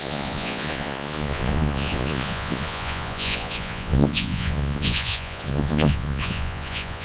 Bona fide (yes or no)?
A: no